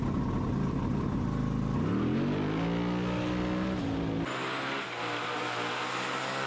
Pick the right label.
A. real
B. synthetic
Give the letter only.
A